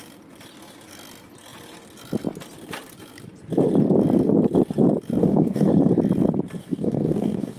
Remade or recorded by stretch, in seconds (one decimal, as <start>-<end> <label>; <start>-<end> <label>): 0.0-5.2 recorded; 5.2-5.7 remade; 5.7-6.6 recorded; 6.6-7.6 remade